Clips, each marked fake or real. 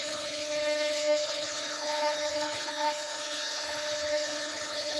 fake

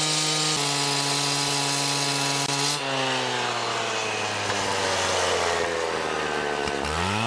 real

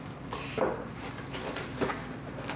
real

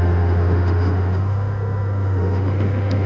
fake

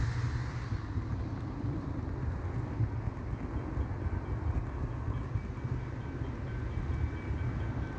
real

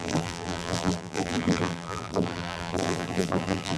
fake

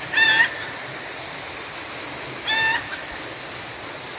real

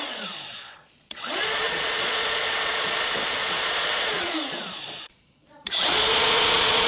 fake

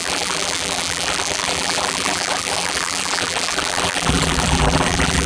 fake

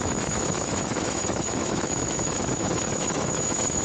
fake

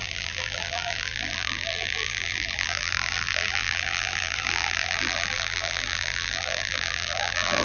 fake